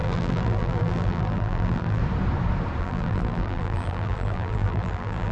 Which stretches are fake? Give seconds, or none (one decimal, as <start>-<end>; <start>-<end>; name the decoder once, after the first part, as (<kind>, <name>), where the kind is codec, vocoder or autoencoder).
0.0-2.0 (vocoder, BigVGAN v2); 2.8-5.3